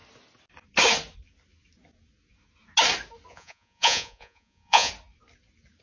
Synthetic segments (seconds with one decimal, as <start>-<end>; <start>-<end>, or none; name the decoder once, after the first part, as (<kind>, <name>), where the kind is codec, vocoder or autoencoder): 3.3-4.9 (vocoder, Vocos)